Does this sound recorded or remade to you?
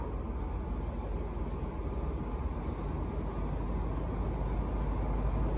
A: recorded